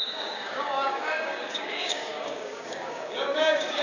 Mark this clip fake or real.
fake